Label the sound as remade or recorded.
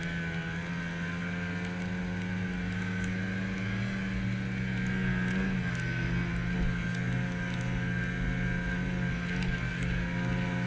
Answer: recorded